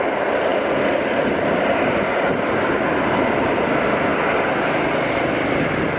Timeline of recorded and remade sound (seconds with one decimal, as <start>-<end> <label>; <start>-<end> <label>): 0.0-6.0 recorded